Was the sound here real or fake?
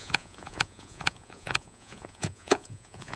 fake